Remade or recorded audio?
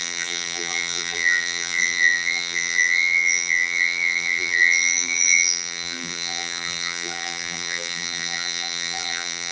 remade